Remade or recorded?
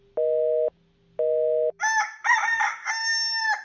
recorded